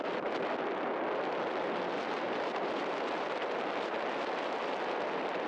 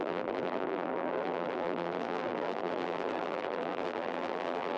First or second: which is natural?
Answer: first